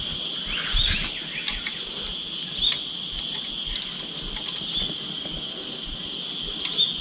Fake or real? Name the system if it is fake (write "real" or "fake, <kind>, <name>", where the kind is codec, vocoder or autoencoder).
real